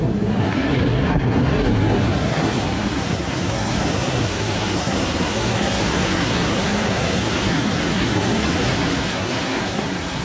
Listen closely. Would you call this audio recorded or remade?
remade